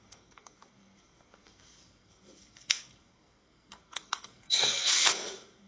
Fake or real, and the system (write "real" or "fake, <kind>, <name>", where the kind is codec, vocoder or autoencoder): fake, codec, SNAC